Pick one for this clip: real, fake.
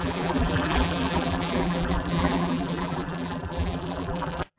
fake